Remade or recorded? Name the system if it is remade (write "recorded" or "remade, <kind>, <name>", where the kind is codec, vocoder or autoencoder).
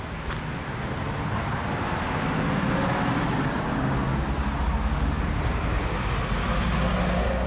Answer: recorded